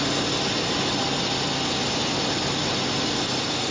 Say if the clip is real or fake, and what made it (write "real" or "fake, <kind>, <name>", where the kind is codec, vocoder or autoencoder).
real